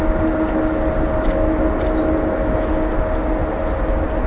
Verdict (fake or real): real